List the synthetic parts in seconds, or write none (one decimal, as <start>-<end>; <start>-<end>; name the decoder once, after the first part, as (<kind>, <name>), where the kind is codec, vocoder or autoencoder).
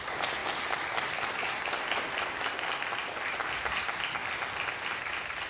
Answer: none